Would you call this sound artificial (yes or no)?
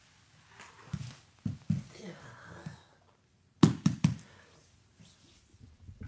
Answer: no